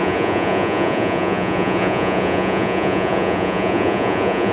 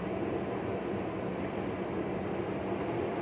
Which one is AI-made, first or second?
first